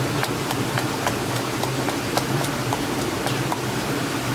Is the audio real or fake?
fake